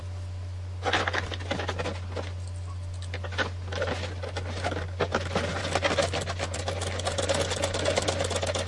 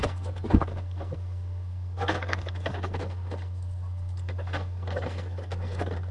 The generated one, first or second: second